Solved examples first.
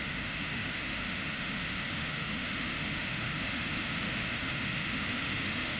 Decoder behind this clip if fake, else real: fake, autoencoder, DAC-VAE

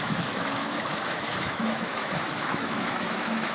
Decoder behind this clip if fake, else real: fake, autoencoder, DAC-VAE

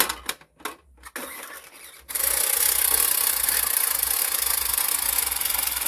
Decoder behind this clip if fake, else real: real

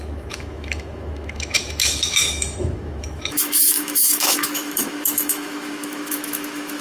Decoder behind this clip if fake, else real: fake, autoencoder, DAC-VAE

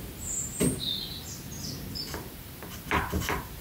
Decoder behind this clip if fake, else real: real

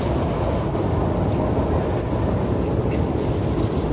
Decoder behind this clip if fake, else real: real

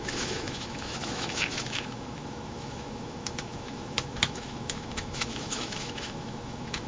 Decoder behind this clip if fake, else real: fake, autoencoder, DAC-VAE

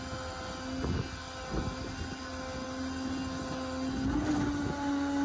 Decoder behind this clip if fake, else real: real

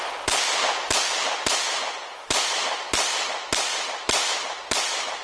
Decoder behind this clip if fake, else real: real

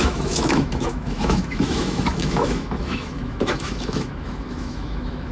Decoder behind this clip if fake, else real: fake, autoencoder, DAC-VAE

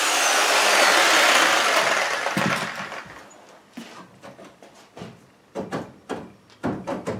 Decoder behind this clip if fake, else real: real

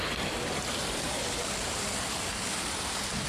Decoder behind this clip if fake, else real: real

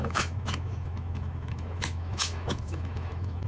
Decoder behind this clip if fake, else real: fake, autoencoder, DAC-VAE